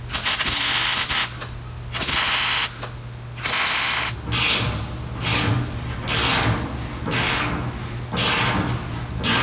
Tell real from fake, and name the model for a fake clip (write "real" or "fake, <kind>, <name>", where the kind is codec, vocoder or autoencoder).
real